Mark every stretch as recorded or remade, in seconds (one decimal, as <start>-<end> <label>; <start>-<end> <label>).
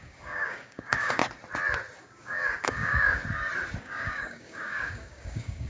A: 0.0-1.2 remade; 1.2-2.0 recorded; 2.0-3.2 remade; 3.2-3.8 recorded; 3.8-5.7 remade